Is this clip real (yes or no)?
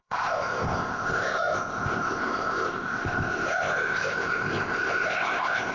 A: no